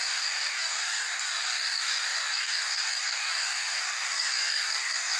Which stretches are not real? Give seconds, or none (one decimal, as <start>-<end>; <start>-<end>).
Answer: 0.0-5.2